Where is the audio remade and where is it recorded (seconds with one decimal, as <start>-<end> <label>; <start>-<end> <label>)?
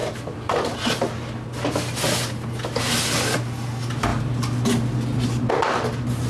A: 0.0-6.3 recorded